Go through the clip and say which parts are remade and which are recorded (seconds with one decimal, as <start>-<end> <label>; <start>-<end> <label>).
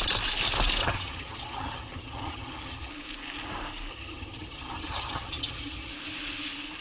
0.0-0.8 recorded; 0.8-2.9 remade; 2.9-3.9 recorded; 3.9-5.9 remade; 5.9-6.8 recorded